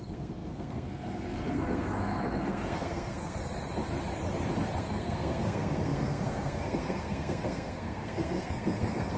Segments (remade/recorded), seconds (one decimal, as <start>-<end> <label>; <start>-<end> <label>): 0.0-3.4 remade; 3.4-4.8 recorded; 4.8-9.2 remade